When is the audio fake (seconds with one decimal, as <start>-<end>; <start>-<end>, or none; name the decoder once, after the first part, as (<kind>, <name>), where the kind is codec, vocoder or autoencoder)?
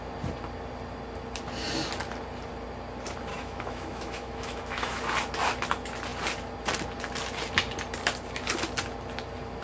3.3-5.0 (autoencoder, DAC-VAE)